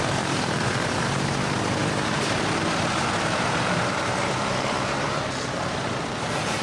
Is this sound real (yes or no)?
no